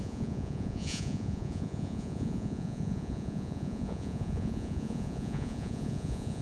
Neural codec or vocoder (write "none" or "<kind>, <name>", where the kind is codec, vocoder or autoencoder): vocoder, Vocos